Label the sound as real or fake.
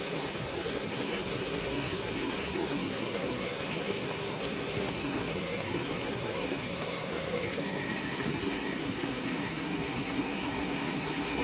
fake